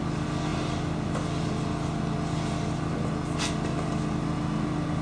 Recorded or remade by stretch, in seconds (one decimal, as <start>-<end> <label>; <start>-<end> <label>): 0.0-5.0 recorded